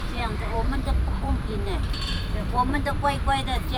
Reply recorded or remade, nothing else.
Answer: remade